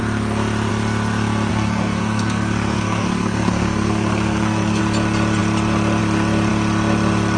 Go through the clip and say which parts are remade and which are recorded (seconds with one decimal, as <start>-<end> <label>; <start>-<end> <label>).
0.0-1.5 recorded; 1.5-4.8 remade; 4.8-7.4 recorded